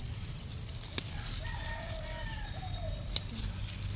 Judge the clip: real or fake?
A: real